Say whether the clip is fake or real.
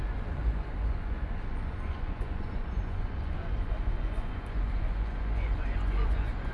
fake